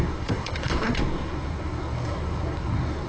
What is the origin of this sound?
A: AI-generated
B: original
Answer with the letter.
A